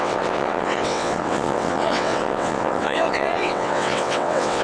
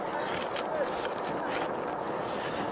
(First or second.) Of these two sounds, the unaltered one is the second